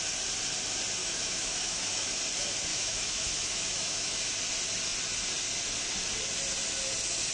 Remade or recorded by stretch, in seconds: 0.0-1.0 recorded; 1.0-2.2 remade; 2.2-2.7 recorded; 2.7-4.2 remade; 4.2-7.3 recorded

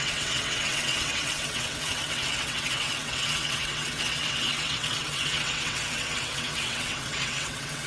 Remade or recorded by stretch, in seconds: 0.0-7.9 remade

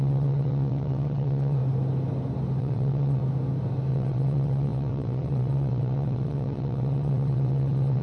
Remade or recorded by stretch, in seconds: 0.0-1.6 remade; 1.6-2.6 recorded; 2.6-3.2 remade; 3.2-3.9 recorded; 3.9-8.0 remade